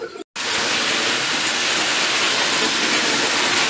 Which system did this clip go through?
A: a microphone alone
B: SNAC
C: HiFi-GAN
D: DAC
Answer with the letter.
A